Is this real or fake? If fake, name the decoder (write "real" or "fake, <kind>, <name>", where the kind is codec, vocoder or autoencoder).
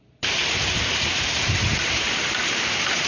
fake, vocoder, BigVGAN v2